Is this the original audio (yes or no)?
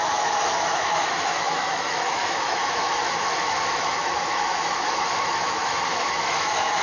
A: no